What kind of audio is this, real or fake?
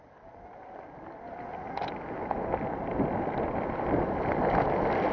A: real